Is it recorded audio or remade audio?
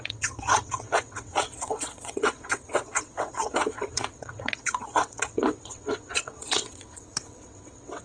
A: remade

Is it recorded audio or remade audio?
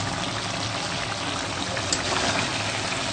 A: recorded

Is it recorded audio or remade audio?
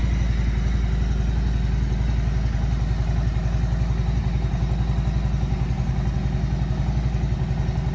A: recorded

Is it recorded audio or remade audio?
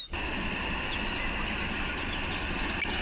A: recorded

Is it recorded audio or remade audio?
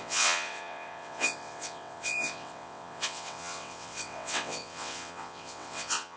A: remade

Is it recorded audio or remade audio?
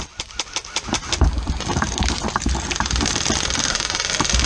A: recorded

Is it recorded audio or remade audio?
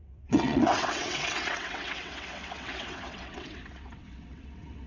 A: remade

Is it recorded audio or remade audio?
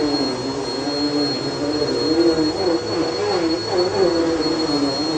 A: recorded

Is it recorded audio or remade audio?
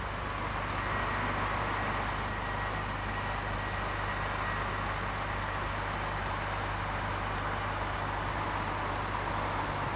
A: recorded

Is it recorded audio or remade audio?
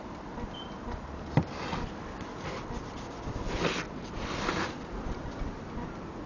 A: recorded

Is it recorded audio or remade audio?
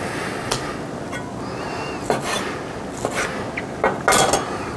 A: recorded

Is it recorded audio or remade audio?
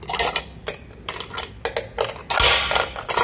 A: recorded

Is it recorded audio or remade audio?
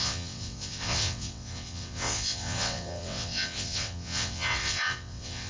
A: remade